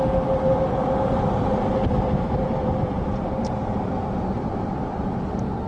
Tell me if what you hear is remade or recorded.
recorded